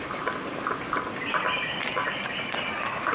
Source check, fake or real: real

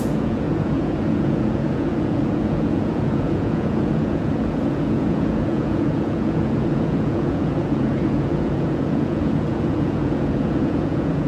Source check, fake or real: fake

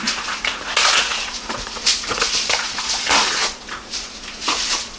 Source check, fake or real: fake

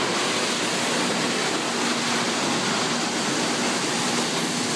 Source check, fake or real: real